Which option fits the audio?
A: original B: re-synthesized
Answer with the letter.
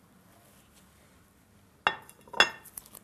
A